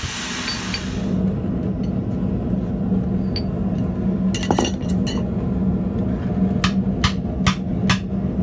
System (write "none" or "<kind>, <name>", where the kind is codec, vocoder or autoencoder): none